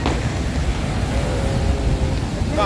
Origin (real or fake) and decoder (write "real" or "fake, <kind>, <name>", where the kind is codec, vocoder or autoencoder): real